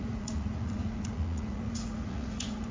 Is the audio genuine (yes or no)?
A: no